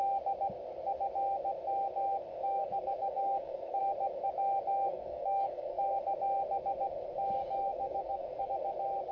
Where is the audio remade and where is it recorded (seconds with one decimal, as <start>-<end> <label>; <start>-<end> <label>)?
0.0-2.3 recorded; 2.3-3.8 remade; 3.8-4.9 recorded; 4.9-5.8 remade; 5.8-7.4 recorded; 7.4-8.5 remade; 8.5-9.1 recorded